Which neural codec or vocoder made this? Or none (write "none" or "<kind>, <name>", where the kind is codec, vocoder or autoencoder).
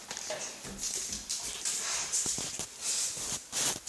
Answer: none